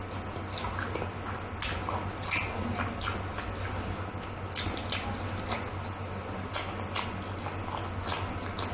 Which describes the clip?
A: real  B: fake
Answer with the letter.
A